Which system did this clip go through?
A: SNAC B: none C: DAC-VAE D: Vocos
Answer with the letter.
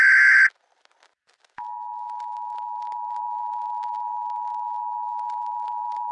B